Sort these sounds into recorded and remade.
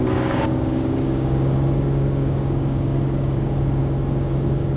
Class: remade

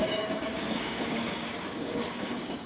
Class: remade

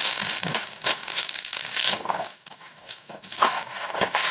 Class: remade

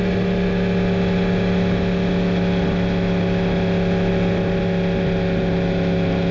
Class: recorded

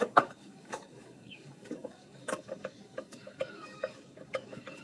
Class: remade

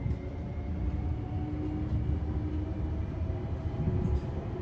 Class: recorded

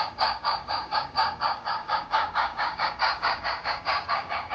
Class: remade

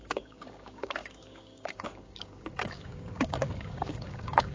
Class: remade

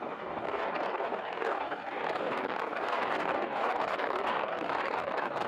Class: remade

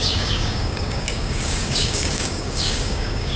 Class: remade